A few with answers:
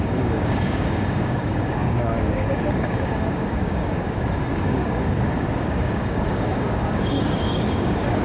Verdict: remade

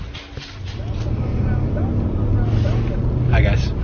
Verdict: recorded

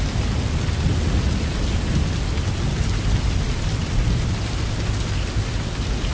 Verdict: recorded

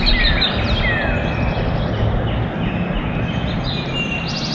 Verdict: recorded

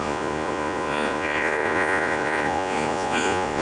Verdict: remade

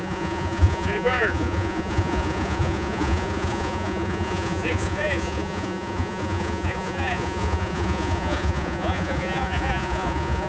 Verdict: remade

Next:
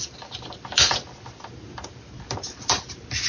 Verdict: recorded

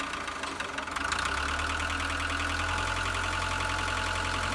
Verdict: recorded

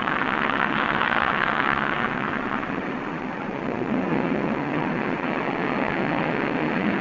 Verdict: remade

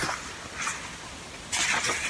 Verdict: recorded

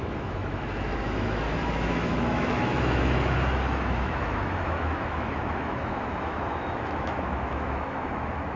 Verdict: remade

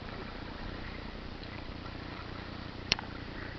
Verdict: remade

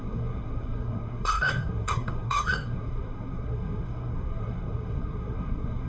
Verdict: remade